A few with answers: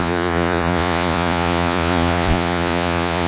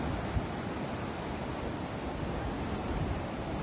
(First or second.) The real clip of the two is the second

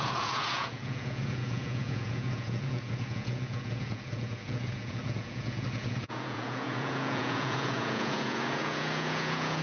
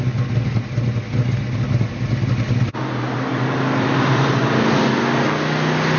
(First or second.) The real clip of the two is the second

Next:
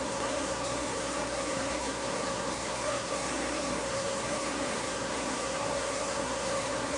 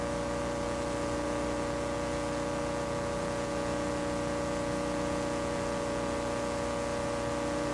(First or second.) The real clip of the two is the second